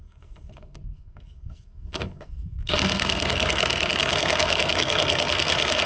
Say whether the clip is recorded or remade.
remade